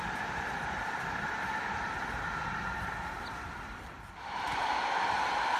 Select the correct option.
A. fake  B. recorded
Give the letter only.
A